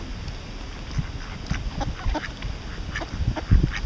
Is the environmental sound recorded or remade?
recorded